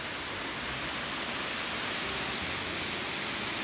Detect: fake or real real